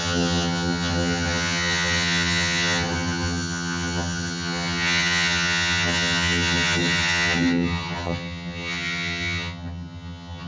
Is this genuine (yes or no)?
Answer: no